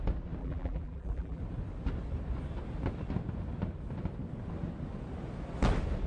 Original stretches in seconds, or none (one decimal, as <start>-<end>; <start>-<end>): 0.0-0.4; 1.4-6.1